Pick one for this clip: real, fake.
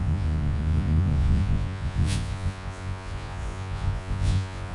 fake